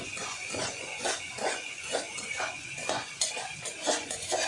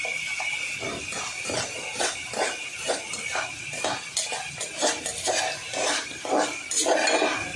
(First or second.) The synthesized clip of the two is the first